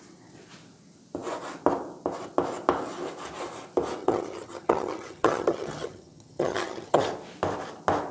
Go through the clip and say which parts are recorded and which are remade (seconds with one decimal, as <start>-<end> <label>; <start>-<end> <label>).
0.0-4.0 recorded; 4.0-7.0 remade; 7.0-8.1 recorded